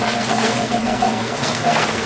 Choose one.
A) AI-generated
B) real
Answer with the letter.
A